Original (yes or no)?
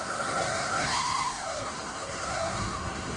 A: no